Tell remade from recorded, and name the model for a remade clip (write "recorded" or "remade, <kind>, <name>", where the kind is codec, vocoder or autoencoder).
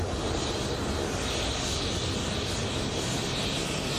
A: recorded